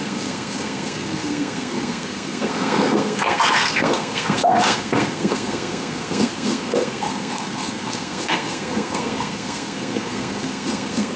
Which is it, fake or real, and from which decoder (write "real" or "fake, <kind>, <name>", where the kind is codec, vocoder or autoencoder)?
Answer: fake, codec, SNAC